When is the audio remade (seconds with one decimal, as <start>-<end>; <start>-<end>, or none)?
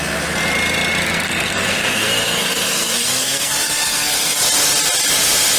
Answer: 1.0-4.4